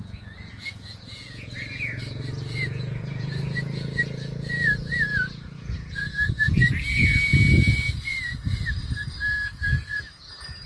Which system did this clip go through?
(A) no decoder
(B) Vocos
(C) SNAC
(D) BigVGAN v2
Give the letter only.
B